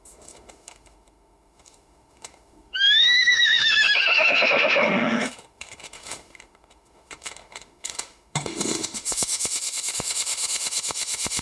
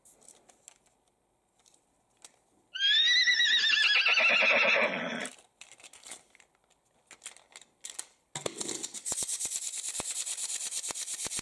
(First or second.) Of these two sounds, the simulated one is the first